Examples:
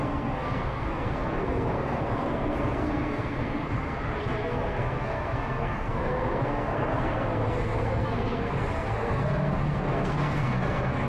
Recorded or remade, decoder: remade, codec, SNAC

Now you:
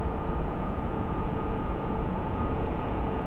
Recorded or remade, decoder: remade, vocoder, Vocos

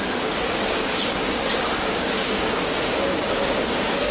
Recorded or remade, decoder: remade, codec, DAC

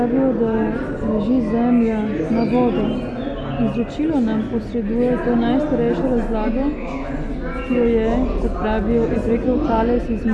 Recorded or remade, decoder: recorded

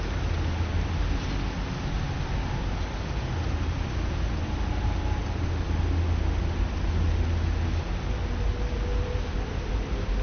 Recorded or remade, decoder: recorded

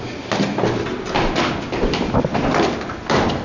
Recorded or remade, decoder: recorded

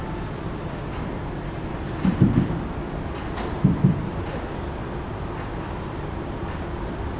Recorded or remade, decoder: recorded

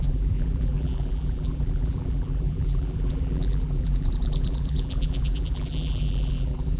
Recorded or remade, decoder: remade, vocoder, BigVGAN v2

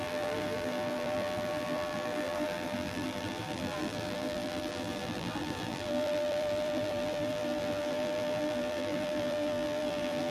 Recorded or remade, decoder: remade, vocoder, BigVGAN v2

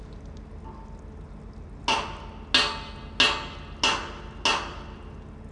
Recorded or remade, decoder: recorded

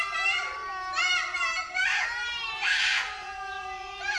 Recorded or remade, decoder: remade, vocoder, BigVGAN v2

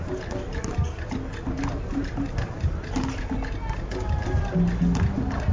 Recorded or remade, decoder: recorded